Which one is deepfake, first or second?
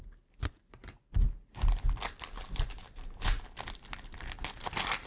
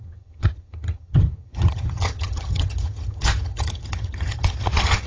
second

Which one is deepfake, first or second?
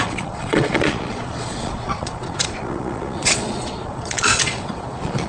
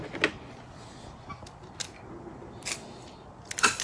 first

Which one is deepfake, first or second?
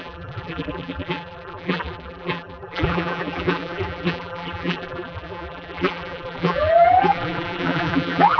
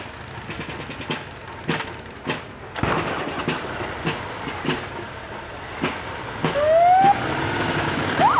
first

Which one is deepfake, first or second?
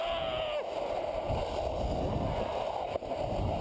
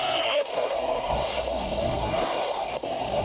second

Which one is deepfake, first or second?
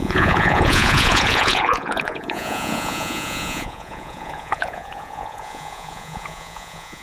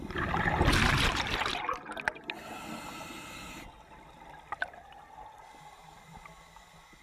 first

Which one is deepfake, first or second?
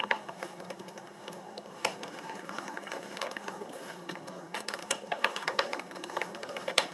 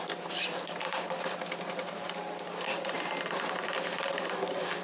first